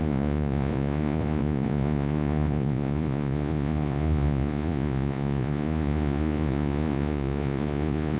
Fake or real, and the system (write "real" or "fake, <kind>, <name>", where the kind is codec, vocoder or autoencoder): fake, vocoder, Vocos